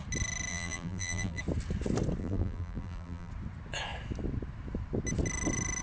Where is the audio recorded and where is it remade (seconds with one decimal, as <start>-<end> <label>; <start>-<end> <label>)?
0.0-0.5 recorded; 0.5-1.4 remade; 1.4-2.2 recorded; 2.2-3.3 remade; 3.3-5.8 recorded